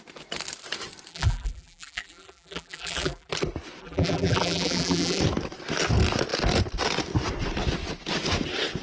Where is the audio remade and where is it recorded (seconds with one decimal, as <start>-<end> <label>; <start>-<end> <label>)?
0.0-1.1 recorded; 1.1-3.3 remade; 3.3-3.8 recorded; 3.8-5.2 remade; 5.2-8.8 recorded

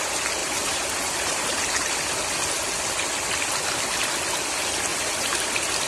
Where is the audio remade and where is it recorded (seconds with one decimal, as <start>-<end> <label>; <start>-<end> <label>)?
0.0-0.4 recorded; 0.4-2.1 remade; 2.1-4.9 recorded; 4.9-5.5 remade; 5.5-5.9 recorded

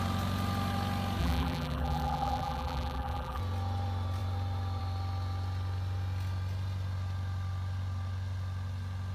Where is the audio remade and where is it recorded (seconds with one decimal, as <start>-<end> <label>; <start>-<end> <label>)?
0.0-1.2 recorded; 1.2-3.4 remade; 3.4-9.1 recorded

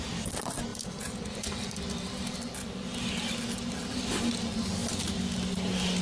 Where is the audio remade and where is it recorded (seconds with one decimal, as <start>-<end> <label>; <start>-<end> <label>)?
0.0-0.7 recorded; 0.7-4.3 remade; 4.3-4.8 recorded; 4.8-6.0 remade